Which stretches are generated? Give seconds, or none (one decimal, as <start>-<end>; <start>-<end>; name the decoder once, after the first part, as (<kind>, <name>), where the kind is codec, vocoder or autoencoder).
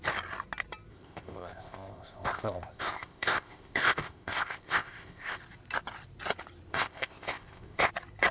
0.9-5.4 (codec, ZipCodec); 6.7-7.9